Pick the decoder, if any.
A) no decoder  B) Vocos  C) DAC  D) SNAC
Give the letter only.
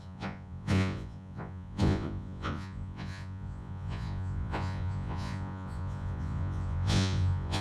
B